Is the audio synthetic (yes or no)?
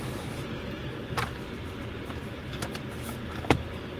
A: no